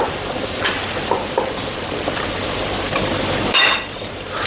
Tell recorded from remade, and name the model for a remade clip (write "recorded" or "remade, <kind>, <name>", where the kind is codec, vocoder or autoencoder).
remade, vocoder, BigVGAN v2